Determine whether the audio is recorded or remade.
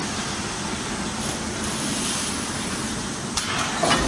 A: recorded